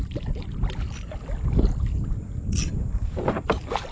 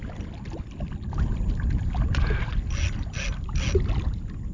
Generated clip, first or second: first